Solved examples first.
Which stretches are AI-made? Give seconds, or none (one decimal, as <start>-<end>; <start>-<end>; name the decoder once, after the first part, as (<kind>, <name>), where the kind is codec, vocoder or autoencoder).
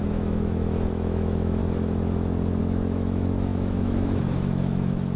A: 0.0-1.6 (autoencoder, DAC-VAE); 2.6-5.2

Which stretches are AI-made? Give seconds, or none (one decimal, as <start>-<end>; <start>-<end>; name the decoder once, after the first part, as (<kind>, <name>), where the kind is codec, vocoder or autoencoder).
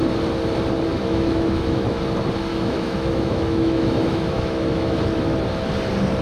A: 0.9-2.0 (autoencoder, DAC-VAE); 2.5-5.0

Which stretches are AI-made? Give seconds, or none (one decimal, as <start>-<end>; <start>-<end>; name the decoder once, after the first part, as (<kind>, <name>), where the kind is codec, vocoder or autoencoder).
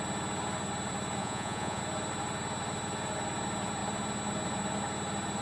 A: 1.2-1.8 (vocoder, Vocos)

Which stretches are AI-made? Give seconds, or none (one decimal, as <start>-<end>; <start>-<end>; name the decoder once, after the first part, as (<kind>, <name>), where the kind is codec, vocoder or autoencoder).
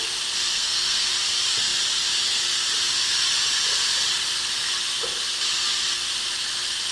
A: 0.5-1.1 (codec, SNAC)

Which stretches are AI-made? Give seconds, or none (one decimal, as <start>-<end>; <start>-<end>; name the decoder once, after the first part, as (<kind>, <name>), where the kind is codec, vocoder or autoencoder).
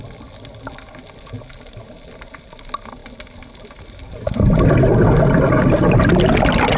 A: none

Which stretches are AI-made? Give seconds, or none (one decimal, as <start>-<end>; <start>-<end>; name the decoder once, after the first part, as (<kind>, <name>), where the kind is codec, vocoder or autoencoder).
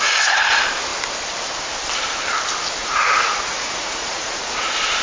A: 2.8-4.5 (vocoder, Vocos)